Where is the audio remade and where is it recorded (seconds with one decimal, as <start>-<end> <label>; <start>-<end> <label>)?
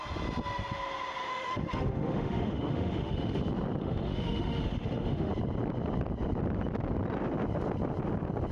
0.0-1.3 recorded; 1.3-3.4 remade; 3.4-3.8 recorded; 3.8-5.3 remade; 5.3-8.5 recorded